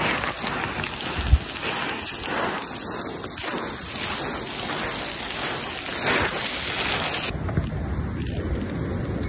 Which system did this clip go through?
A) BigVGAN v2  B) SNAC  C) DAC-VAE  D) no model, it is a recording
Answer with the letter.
D